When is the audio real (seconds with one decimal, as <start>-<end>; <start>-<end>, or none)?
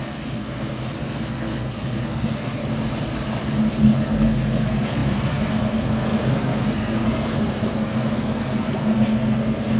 2.6-3.7